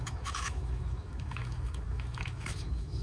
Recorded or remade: remade